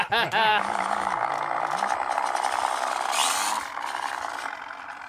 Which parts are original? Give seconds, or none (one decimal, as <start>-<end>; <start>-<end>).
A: 0.0-0.5; 1.3-5.1